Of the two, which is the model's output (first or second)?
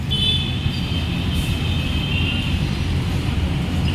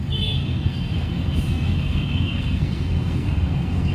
second